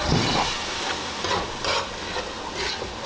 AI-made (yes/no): no